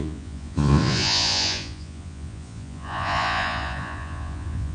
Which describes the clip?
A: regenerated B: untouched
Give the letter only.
A